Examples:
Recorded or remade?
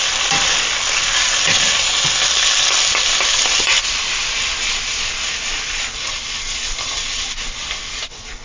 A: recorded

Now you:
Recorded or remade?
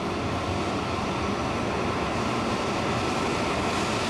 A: recorded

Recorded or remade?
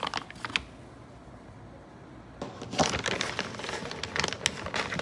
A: recorded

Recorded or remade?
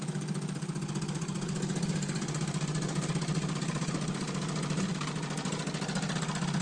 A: recorded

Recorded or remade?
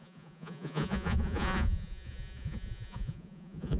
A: remade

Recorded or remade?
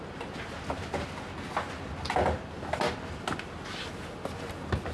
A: recorded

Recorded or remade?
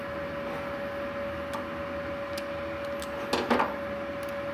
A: recorded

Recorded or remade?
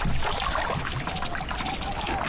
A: recorded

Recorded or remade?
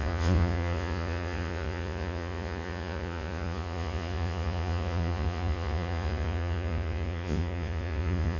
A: remade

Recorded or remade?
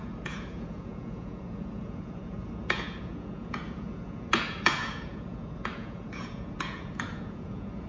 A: remade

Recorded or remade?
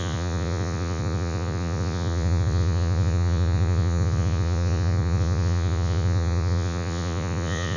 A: remade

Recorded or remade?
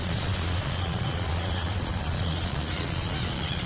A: remade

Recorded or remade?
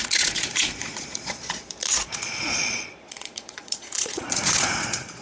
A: remade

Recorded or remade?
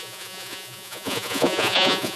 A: remade